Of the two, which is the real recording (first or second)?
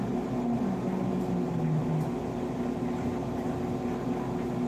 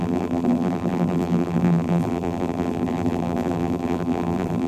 first